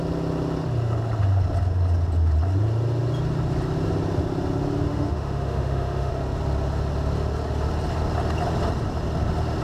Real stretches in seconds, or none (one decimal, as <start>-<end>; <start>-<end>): 0.0-4.9; 6.1-9.6